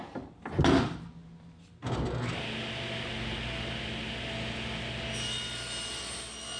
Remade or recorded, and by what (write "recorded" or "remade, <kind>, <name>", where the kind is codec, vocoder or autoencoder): recorded